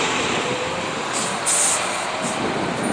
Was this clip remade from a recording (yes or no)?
no